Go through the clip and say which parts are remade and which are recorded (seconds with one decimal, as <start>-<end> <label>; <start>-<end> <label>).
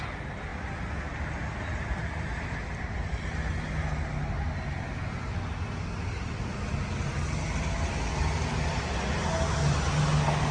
0.0-10.5 recorded